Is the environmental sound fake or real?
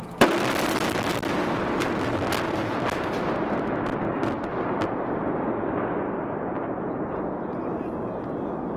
real